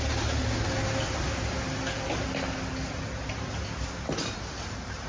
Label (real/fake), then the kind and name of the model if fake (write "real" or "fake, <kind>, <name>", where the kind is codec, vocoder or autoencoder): real